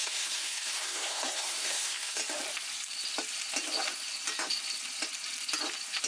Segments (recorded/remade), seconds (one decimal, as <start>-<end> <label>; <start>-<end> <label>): 0.0-2.2 remade; 2.2-6.1 recorded